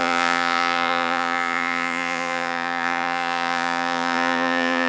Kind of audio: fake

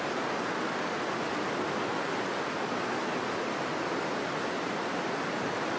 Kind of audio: real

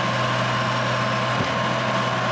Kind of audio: real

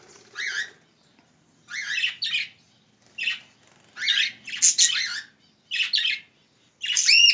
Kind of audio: real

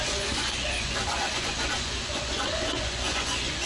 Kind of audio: fake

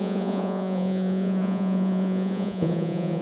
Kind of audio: fake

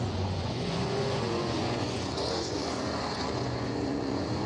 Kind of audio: fake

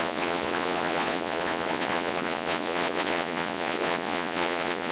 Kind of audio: fake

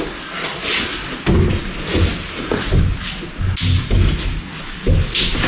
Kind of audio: real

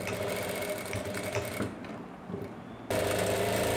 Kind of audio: real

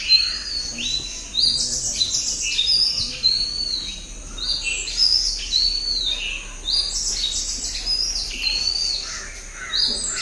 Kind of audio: real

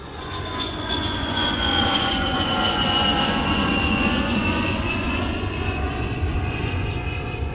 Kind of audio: fake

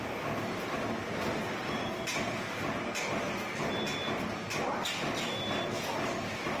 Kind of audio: real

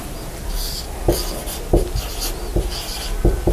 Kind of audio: real